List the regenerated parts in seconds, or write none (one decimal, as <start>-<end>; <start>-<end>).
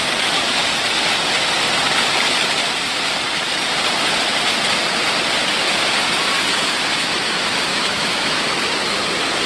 7.7-8.4